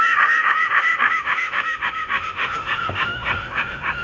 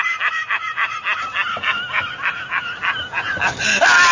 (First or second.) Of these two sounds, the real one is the second